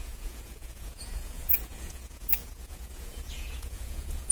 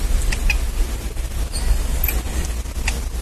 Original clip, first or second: second